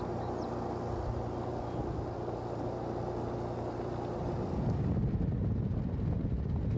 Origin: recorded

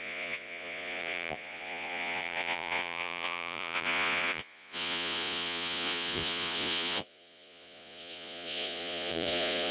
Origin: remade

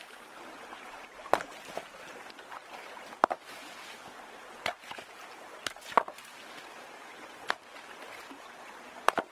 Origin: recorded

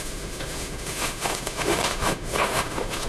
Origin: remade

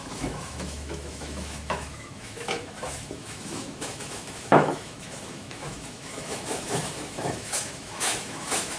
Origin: remade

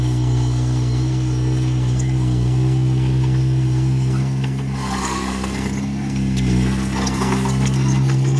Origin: remade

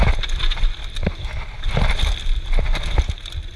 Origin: recorded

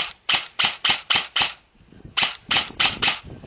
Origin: recorded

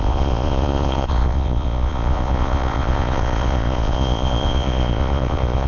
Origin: remade